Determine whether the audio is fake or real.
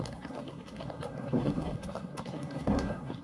fake